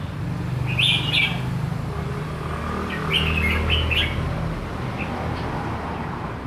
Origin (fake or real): real